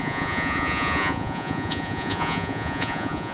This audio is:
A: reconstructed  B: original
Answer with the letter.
A